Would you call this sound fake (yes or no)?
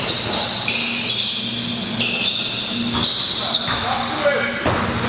no